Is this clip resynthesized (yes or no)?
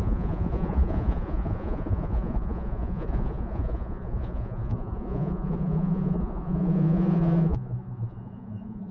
yes